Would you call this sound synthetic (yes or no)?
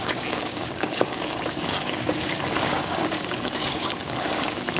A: yes